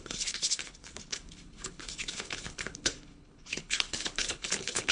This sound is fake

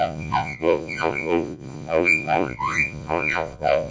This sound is fake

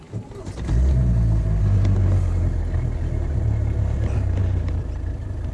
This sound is real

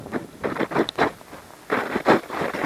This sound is real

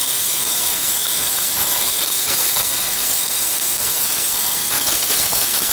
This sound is fake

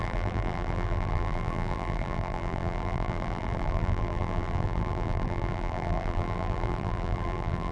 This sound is fake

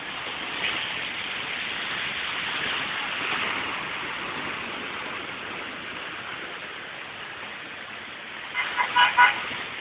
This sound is real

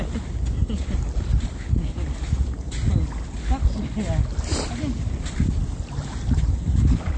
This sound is real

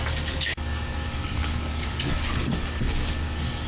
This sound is fake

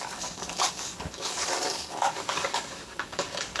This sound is fake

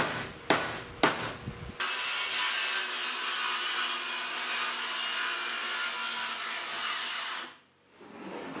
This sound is real